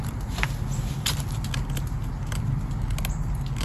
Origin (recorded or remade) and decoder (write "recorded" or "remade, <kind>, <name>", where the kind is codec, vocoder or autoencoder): recorded